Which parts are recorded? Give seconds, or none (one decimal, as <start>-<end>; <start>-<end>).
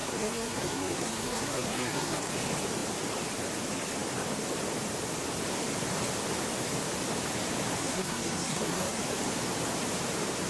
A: 2.3-7.8; 9.0-10.5